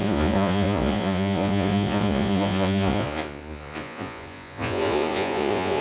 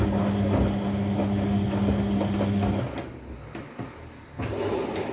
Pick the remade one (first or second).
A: first